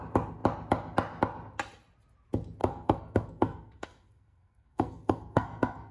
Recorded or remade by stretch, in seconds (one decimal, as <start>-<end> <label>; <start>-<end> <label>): 0.0-2.6 recorded; 2.6-5.9 remade